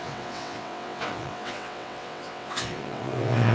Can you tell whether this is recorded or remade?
remade